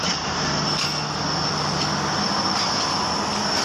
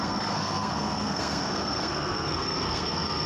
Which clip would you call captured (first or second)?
first